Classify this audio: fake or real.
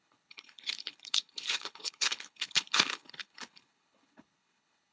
fake